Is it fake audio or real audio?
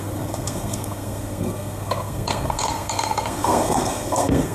fake